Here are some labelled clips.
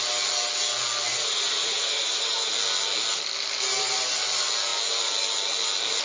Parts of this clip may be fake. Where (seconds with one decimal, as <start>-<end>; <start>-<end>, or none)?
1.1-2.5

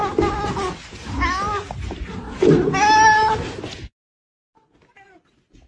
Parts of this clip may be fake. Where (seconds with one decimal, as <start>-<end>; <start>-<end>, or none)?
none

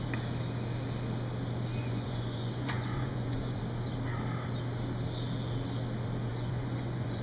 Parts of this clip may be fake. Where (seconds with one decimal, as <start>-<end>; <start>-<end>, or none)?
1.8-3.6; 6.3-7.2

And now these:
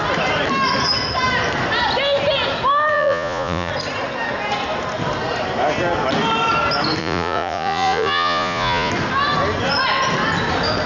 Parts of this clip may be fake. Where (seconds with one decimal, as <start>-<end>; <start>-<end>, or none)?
2.9-3.7; 7.0-8.9

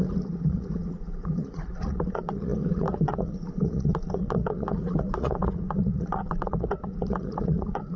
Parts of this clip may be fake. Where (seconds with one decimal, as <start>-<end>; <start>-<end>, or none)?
0.0-8.0

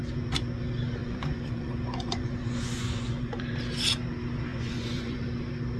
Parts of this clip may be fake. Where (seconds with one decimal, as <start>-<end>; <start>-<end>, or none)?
1.0-3.5; 4.5-5.2

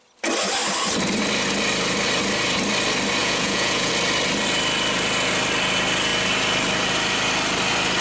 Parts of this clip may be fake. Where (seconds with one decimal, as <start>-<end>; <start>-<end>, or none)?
3.2-3.9